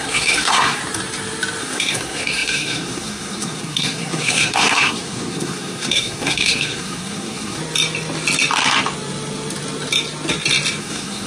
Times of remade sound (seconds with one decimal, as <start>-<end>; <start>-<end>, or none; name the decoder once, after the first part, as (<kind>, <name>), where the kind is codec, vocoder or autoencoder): 0.0-0.8 (codec, SNAC); 1.6-7.6; 10.8-11.3